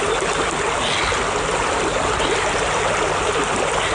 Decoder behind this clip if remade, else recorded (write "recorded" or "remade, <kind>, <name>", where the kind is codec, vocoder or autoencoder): recorded